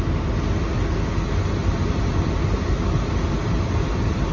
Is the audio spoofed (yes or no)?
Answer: no